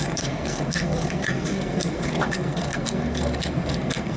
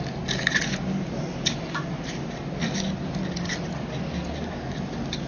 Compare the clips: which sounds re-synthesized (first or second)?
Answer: first